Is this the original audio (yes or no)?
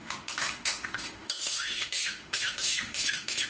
no